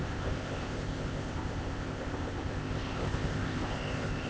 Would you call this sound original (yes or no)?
no